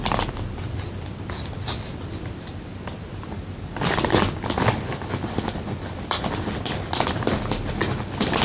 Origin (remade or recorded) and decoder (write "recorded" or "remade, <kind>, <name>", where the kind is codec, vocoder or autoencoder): recorded